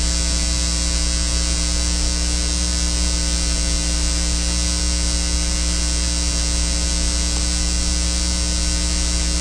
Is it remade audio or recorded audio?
recorded